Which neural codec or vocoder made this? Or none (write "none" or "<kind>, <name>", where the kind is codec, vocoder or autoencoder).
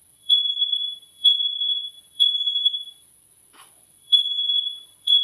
vocoder, Vocos